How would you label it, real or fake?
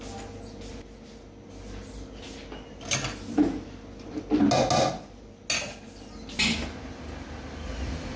real